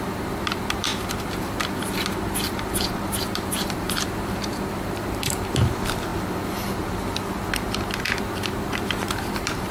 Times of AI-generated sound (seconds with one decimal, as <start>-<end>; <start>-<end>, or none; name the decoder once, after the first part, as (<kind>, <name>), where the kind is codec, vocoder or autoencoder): 0.0-6.1 (vocoder, BigVGAN v2); 8.0-9.7